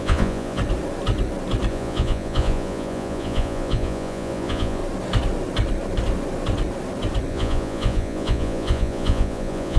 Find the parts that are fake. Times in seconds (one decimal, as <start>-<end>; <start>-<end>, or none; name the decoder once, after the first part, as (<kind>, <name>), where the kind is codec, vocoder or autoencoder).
0.0-0.6 (vocoder, Vocos); 1.7-4.8; 7.3-9.8